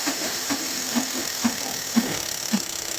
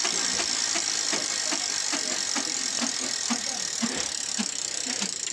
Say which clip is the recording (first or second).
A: second